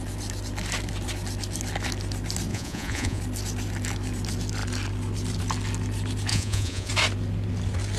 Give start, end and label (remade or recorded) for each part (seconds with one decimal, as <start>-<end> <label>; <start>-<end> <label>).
0.0-2.5 recorded; 2.5-3.2 remade; 3.2-6.3 recorded; 6.3-6.9 remade; 6.9-8.0 recorded